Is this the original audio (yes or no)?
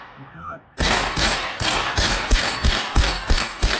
no